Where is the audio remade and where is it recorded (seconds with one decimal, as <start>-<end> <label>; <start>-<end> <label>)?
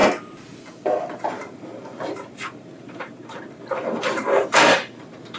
0.0-1.3 recorded; 1.3-5.4 remade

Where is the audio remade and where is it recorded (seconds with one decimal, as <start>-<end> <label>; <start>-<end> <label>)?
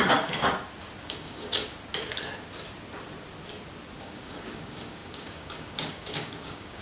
0.0-0.4 remade; 0.4-1.0 recorded; 1.0-1.6 remade; 1.6-4.0 recorded; 4.0-6.8 remade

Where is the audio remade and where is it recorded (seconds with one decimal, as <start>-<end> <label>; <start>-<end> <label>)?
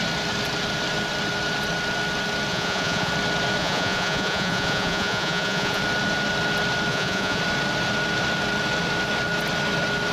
0.0-2.5 recorded; 2.5-3.1 remade; 3.1-3.6 recorded; 3.6-5.8 remade; 5.8-6.9 recorded; 6.9-7.4 remade; 7.4-10.1 recorded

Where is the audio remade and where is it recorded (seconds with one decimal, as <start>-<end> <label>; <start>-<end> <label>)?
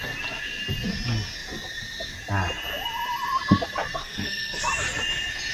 0.0-4.0 recorded; 4.0-4.6 remade; 4.6-5.5 recorded